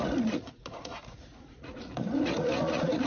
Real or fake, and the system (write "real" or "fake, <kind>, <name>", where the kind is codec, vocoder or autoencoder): fake, vocoder, Vocos